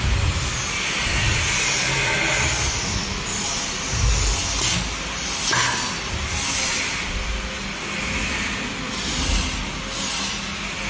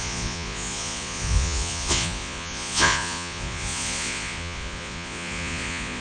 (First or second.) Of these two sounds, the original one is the first